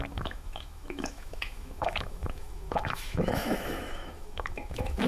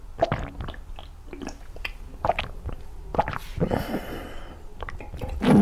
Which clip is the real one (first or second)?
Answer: second